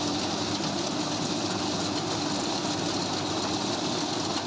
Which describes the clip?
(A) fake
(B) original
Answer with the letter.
B